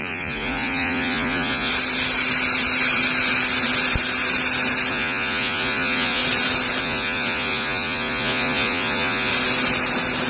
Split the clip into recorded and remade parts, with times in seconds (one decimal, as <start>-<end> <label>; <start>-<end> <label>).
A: 0.0-1.7 remade; 1.7-4.9 recorded; 4.9-6.2 remade; 6.2-6.8 recorded; 6.8-9.3 remade; 9.3-10.3 recorded